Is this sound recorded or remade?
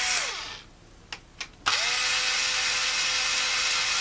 recorded